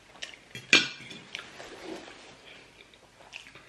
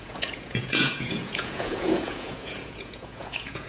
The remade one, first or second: second